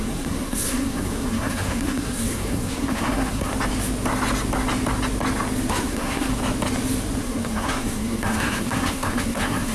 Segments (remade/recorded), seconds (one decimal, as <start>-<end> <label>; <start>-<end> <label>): 0.0-3.5 remade; 3.5-5.7 recorded; 5.7-6.3 remade; 6.3-7.2 recorded; 7.2-9.7 remade